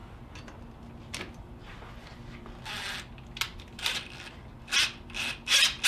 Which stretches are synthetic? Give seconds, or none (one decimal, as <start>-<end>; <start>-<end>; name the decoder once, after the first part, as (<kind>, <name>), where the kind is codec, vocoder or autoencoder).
none